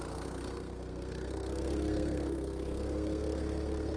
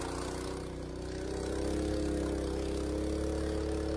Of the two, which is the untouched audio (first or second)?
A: second